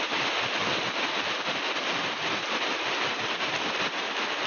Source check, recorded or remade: recorded